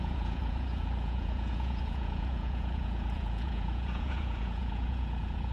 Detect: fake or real fake